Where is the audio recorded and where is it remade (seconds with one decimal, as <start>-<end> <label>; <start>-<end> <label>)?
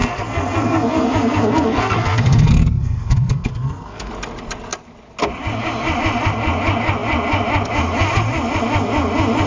0.0-4.1 remade; 4.1-9.5 recorded